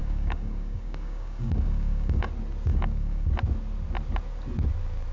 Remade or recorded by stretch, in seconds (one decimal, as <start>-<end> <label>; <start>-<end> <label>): 0.0-2.3 remade; 2.3-2.7 recorded; 2.7-3.3 remade; 3.3-5.1 recorded